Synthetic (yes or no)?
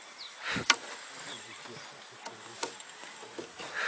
no